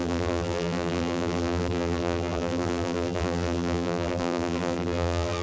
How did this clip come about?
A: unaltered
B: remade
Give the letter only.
B